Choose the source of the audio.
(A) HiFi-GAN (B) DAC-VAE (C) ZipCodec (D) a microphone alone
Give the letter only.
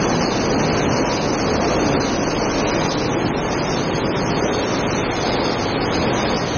D